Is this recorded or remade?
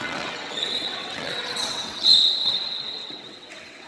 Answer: remade